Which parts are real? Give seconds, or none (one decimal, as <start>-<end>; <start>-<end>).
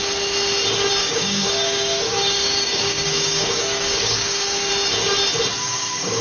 0.0-1.0; 4.7-5.6